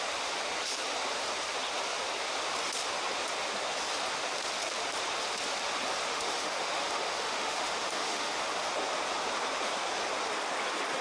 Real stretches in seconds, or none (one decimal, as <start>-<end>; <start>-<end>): 0.0-6.1; 8.7-11.0